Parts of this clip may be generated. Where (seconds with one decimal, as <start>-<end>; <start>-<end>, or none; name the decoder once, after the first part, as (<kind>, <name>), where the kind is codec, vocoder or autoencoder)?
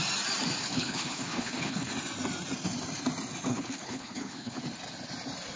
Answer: 0.6-1.9 (codec, HILCodec); 3.5-4.6